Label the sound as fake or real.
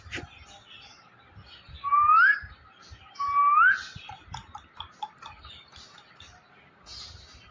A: real